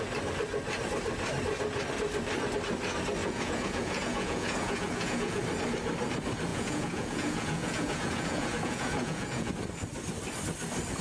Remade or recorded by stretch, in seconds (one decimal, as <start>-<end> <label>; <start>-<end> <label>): 0.0-3.2 recorded; 3.2-5.4 remade; 5.4-6.5 recorded; 6.5-9.5 remade; 9.5-11.0 recorded